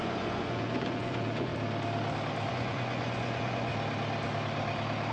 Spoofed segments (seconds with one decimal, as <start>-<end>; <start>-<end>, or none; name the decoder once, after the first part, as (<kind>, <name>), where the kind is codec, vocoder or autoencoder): 0.0-1.5 (vocoder, Vocos); 2.5-3.7